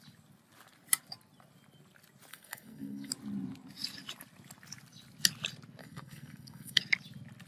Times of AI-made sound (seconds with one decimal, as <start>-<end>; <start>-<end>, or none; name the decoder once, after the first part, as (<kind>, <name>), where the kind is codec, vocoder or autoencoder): 2.3-3.1 (codec, SNAC); 5.8-6.8